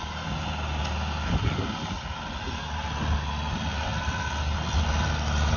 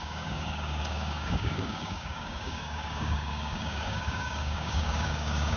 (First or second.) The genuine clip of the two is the first